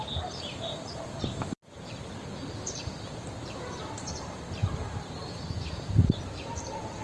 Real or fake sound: fake